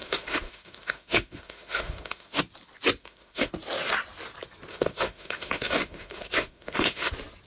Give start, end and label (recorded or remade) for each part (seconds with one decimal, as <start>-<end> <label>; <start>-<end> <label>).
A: 0.0-2.4 remade; 2.4-3.0 recorded; 3.0-3.5 remade; 3.5-4.7 recorded; 4.7-7.1 remade; 7.1-7.5 recorded